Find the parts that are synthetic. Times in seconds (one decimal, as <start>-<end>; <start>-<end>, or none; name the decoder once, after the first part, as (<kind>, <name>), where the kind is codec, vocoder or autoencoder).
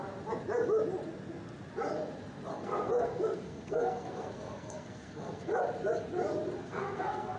2.5-5.5 (codec, SNAC); 6.6-7.4